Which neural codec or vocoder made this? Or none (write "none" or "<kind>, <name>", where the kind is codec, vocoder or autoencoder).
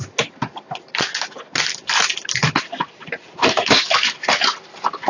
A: none